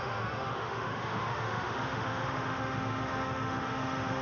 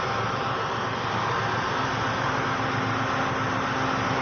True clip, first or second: second